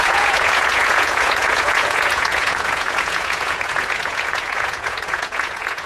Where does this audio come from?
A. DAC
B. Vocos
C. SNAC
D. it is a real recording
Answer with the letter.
B